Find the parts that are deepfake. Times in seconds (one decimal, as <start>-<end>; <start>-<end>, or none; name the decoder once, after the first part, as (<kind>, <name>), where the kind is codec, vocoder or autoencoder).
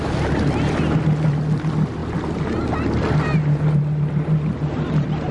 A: none